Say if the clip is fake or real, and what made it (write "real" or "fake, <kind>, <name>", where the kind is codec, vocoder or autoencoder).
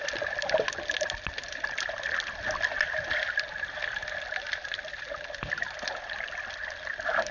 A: real